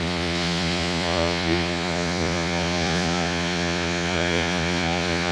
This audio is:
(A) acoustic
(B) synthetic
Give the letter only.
B